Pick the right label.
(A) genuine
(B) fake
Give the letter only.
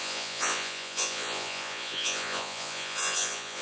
B